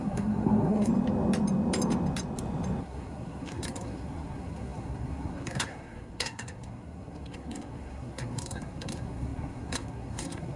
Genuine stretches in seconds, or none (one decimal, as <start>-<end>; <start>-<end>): 0.9-2.8